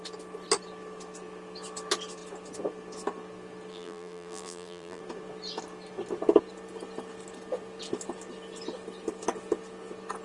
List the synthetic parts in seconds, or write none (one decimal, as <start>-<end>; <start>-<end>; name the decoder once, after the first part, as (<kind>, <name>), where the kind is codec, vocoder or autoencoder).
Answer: 3.7-5.0 (vocoder, BigVGAN v2)